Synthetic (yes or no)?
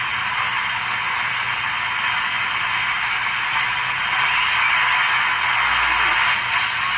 no